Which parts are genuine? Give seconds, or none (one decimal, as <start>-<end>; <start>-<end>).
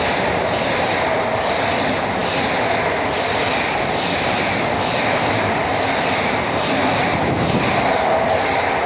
0.0-8.9